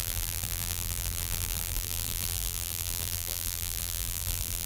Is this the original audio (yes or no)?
no